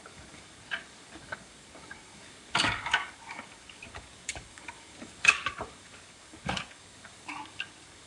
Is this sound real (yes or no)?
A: no